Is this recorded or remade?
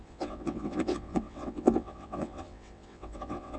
remade